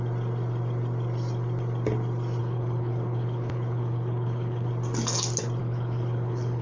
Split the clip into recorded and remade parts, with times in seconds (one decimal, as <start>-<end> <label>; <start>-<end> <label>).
0.0-2.4 recorded; 2.4-4.7 remade; 4.7-5.6 recorded; 5.6-6.6 remade